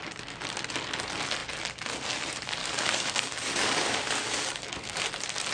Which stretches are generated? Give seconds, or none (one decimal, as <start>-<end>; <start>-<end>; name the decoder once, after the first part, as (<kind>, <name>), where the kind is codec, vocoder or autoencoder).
2.6-5.0 (codec, DAC)